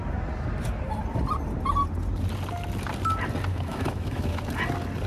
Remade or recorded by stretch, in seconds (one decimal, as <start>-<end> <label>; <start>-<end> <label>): 0.0-3.5 recorded; 3.5-4.4 remade; 4.4-5.1 recorded